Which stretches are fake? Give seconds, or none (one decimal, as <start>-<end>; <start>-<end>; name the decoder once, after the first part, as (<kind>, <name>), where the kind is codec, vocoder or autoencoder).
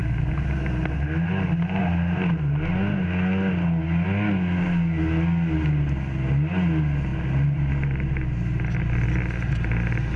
7.1-7.7 (vocoder, BigVGAN v2)